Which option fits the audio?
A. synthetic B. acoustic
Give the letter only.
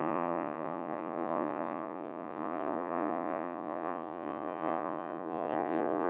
A